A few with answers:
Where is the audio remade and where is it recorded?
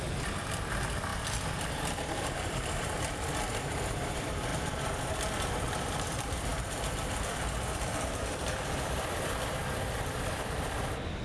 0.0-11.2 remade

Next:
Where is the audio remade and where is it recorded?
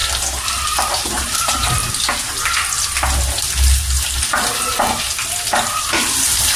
0.0-0.9 recorded; 0.9-1.8 remade; 1.8-5.8 recorded; 5.8-6.6 remade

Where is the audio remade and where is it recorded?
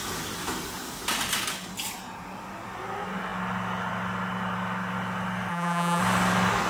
0.0-5.5 recorded; 5.5-6.0 remade; 6.0-6.7 recorded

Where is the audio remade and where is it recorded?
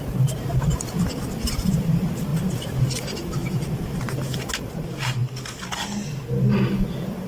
0.0-3.4 recorded; 3.4-4.5 remade; 4.5-7.3 recorded